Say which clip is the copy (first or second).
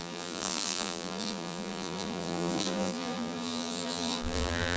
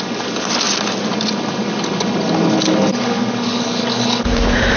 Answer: first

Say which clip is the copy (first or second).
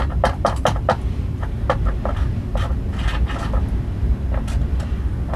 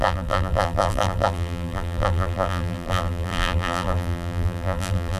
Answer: second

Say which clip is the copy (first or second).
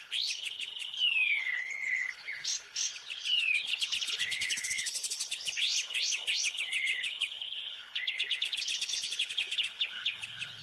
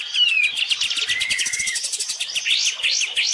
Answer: first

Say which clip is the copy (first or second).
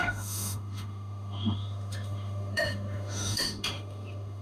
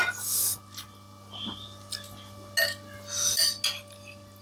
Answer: first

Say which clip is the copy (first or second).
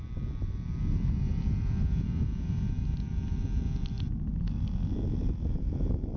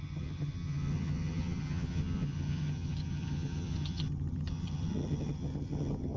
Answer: second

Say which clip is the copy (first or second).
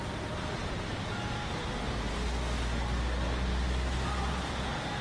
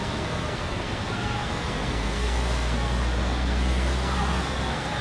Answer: second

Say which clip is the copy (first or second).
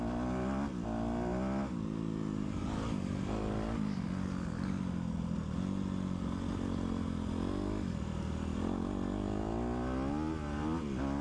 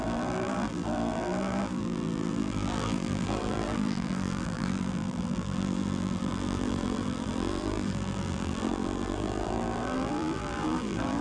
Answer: second